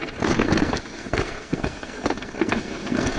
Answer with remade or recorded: remade